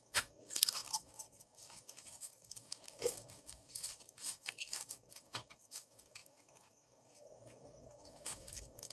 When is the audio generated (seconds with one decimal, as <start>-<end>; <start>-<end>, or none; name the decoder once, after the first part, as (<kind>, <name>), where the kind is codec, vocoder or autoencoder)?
0.0-8.9 (codec, DAC)